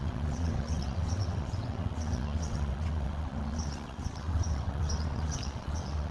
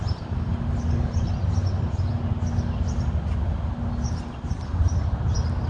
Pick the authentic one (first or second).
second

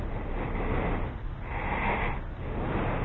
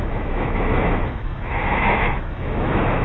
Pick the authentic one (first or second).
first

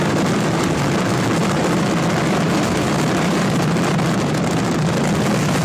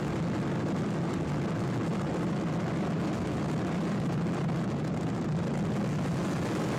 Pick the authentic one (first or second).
second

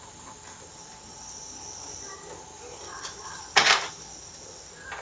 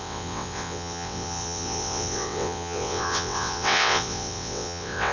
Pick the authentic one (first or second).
first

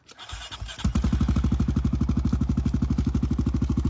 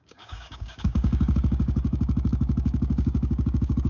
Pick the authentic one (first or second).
first